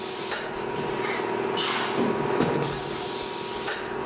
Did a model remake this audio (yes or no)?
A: no